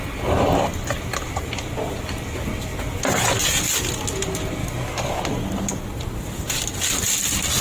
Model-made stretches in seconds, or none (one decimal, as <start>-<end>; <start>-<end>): 4.6-5.2